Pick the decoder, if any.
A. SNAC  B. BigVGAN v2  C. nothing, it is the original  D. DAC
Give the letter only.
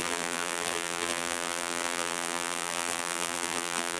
B